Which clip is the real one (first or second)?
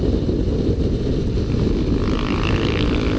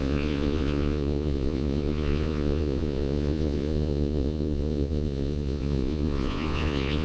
first